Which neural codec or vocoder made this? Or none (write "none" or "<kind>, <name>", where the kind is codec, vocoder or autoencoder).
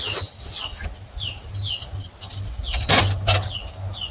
none